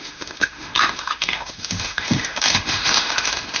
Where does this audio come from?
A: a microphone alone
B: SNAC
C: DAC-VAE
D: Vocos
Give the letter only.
C